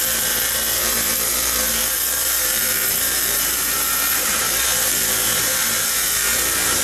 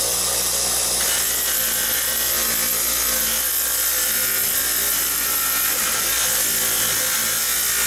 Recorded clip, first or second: second